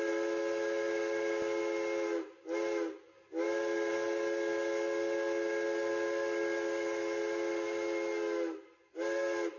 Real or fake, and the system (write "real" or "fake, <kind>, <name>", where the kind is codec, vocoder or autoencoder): real